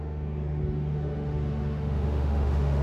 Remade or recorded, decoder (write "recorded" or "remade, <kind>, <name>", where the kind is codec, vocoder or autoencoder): remade, autoencoder, DAC-VAE